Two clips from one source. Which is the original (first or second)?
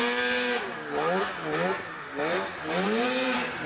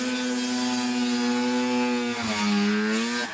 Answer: second